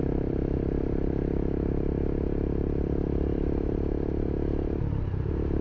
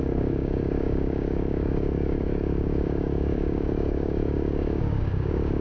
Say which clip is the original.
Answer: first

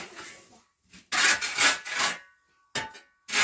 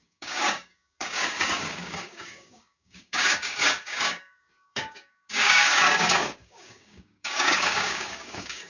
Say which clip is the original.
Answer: first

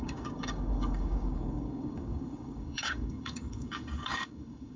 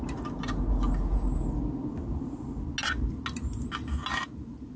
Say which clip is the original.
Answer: second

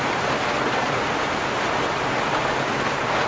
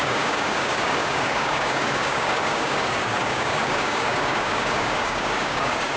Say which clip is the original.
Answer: first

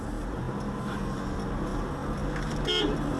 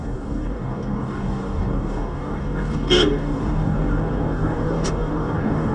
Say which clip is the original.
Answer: first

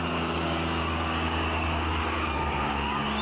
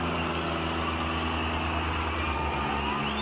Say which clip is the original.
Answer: second